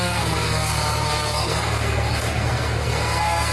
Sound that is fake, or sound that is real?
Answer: fake